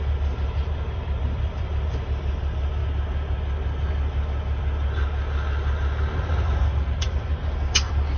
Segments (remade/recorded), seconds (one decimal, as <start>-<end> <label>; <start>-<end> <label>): 0.0-2.8 remade; 2.8-7.7 recorded; 7.7-8.2 remade